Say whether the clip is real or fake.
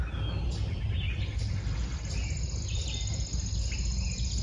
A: real